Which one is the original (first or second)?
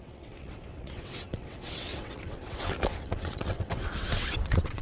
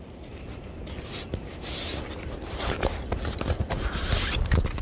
second